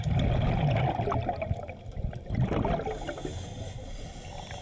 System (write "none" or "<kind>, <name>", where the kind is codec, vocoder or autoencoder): none